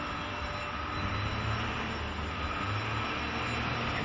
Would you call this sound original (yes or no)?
yes